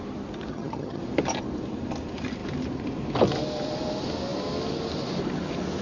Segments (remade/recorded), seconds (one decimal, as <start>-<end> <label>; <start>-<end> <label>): 0.0-0.5 recorded; 0.5-1.0 remade; 1.0-5.8 recorded